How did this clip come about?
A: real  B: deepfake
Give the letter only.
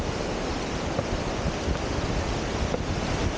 A